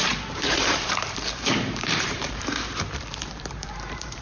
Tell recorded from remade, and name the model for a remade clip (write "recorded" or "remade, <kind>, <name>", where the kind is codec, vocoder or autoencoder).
remade, vocoder, BigVGAN v2